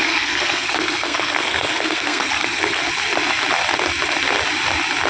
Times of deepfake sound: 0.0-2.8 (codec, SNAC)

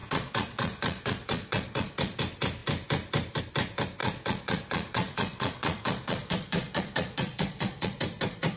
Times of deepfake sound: 0.0-2.2 (vocoder, Vocos); 4.0-8.0

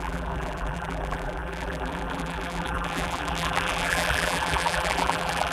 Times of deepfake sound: 0.0-5.5 (vocoder, BigVGAN v2)